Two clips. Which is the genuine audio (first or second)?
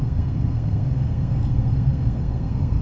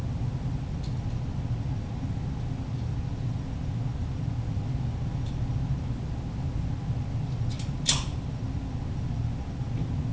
second